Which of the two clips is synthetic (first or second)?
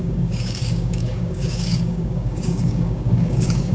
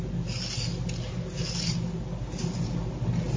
first